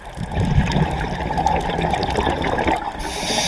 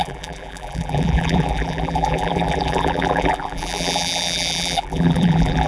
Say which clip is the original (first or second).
first